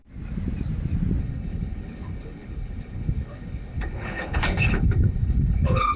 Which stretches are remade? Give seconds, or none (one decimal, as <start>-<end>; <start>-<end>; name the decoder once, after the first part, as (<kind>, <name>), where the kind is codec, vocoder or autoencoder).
1.2-6.0 (codec, HILCodec)